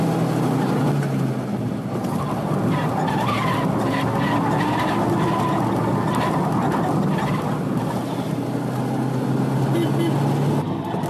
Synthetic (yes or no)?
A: no